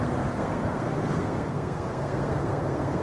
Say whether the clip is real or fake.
fake